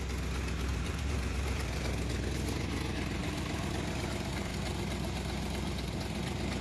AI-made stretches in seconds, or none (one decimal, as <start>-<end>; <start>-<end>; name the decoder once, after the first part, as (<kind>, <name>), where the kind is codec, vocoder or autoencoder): 0.7-1.8 (vocoder, BigVGAN v2); 3.2-3.7